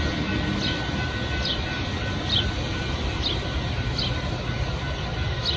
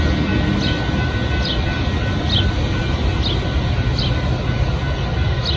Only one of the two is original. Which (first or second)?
second